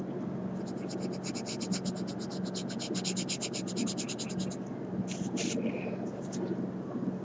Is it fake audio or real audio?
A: real